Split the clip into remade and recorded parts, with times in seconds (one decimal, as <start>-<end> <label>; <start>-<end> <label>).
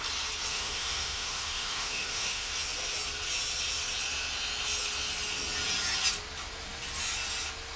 0.0-0.5 recorded; 0.5-2.5 remade; 2.5-7.8 recorded